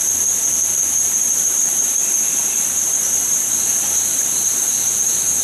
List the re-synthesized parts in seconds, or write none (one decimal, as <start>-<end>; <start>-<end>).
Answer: 0.0-2.0; 2.8-4.5